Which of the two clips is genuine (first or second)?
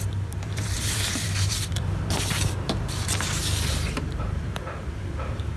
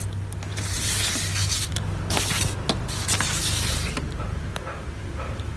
second